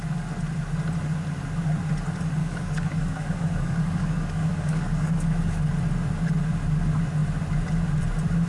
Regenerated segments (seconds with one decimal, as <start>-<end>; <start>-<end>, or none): 2.4-5.6